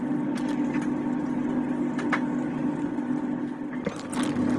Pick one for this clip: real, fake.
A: real